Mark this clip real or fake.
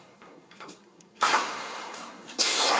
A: fake